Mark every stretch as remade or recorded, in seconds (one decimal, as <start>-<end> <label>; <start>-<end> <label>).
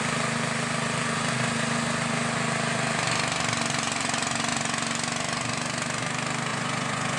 0.0-6.5 recorded; 6.5-7.2 remade